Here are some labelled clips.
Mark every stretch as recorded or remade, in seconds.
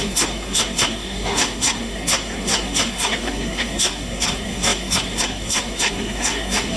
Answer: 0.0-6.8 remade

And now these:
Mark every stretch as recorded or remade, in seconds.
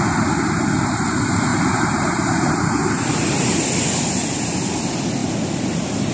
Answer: 0.0-1.5 recorded; 1.5-3.6 remade; 3.6-6.1 recorded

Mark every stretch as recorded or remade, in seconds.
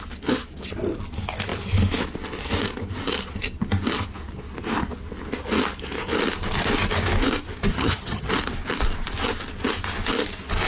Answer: 0.0-7.7 recorded; 7.7-8.3 remade; 8.3-10.7 recorded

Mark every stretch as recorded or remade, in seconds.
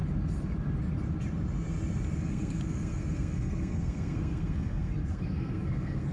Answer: 0.0-2.3 recorded; 2.3-6.1 remade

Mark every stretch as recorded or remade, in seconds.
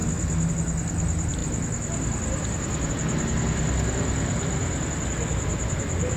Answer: 0.0-6.2 recorded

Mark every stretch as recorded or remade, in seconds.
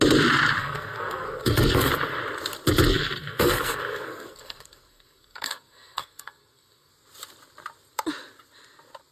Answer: 0.0-0.6 recorded; 0.6-1.9 remade; 1.9-2.9 recorded; 2.9-6.9 remade; 6.9-9.1 recorded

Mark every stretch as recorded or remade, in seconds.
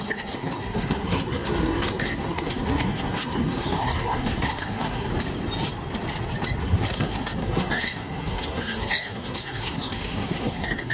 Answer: 0.0-5.1 remade; 5.1-6.6 recorded; 6.6-10.9 remade